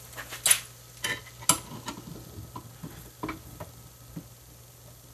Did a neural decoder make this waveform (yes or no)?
no